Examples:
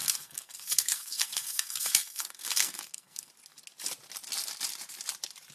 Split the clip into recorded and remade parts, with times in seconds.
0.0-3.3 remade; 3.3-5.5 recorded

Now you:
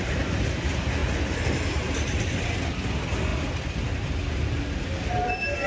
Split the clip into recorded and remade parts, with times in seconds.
0.0-5.7 recorded

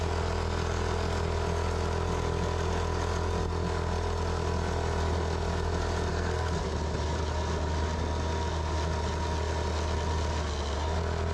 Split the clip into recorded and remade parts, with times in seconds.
0.0-6.1 recorded; 6.1-6.6 remade; 6.6-11.3 recorded

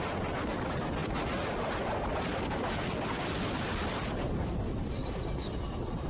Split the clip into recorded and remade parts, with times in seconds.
0.0-6.1 recorded

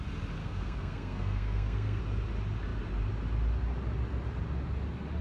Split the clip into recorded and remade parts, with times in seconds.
0.0-0.4 recorded; 0.4-2.0 remade; 2.0-5.2 recorded

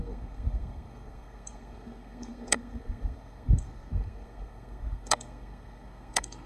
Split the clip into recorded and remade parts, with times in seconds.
0.0-6.5 remade

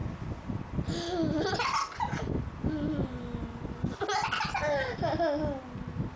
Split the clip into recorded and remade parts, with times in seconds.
0.0-6.2 recorded